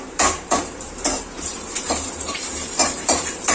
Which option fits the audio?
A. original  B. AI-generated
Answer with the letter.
B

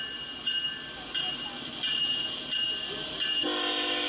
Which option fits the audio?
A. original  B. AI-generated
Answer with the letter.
A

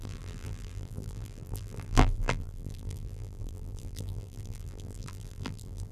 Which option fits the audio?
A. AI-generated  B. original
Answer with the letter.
A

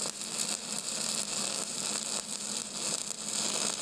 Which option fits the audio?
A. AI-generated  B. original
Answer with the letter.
B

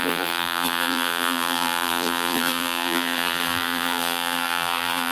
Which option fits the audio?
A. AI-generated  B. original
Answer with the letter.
A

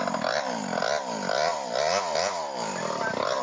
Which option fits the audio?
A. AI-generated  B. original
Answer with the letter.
B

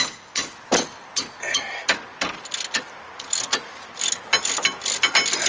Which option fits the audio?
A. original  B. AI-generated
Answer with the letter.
A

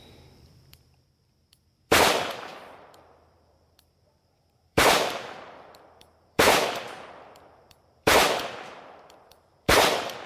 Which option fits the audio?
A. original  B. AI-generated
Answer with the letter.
B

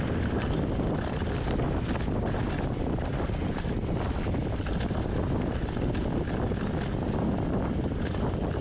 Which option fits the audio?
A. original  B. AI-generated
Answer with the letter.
B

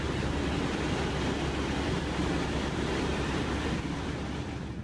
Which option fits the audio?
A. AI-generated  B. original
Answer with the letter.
A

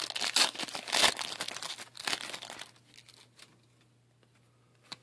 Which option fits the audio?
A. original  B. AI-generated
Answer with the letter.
A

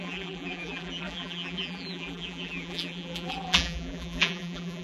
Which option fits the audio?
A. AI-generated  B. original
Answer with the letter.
A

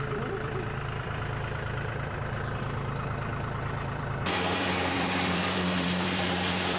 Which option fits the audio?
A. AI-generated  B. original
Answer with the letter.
A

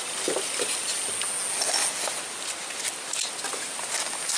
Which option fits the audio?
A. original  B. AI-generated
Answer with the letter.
A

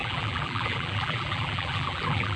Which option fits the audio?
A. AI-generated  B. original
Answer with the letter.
A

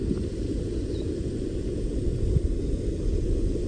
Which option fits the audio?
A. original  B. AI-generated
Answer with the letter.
A